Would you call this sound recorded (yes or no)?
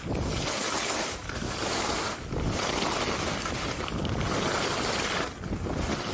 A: yes